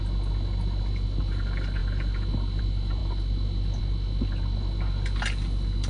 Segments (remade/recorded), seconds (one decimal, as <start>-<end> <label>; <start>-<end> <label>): 0.0-5.9 recorded